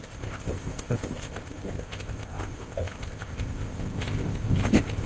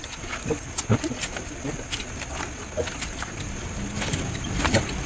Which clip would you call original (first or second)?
second